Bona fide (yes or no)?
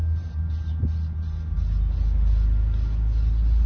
yes